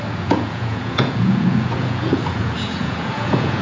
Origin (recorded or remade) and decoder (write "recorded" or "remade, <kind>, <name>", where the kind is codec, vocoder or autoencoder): remade, vocoder, Vocos